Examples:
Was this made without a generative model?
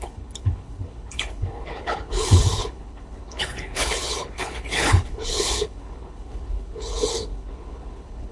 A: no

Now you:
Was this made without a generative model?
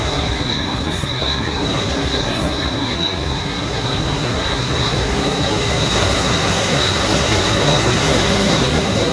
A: no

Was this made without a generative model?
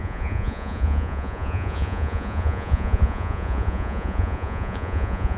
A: no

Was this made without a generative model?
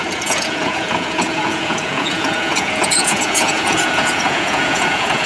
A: no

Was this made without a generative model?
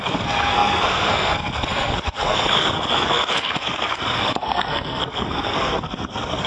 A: no